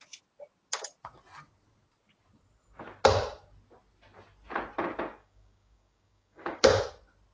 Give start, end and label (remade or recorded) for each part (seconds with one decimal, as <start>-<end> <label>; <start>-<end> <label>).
0.0-5.2 recorded; 5.2-6.8 remade; 6.8-7.3 recorded